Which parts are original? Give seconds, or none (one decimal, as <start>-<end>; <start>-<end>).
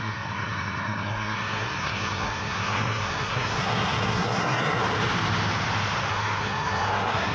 4.8-6.1